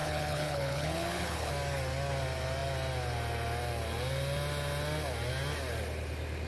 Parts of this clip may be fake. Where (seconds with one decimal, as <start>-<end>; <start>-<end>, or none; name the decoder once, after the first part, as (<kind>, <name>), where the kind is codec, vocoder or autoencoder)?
0.0-1.5 (codec, HILCodec)